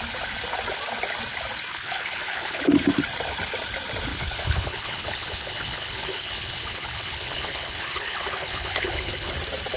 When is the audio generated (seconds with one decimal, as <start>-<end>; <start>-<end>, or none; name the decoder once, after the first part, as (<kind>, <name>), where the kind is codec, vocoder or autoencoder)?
1.7-2.6 (codec, HILCodec); 4.1-9.3